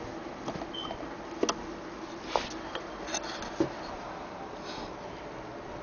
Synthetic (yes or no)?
no